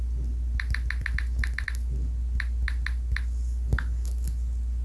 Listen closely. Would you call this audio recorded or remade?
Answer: recorded